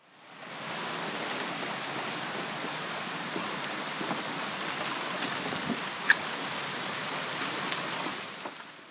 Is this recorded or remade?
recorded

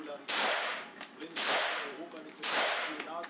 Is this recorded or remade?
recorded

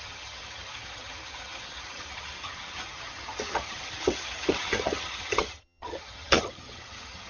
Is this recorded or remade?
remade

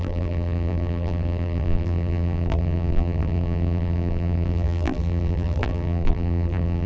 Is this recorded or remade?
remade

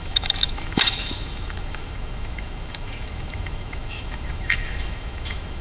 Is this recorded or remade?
remade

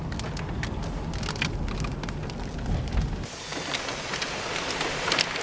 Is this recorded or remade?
recorded